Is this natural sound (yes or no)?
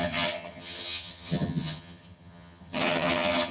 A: no